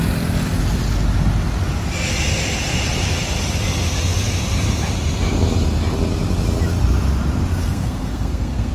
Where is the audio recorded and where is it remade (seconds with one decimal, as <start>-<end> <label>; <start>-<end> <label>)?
0.0-7.6 recorded; 7.6-8.7 remade